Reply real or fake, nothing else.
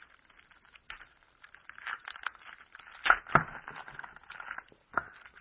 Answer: real